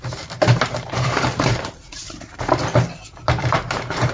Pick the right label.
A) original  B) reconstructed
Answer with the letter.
B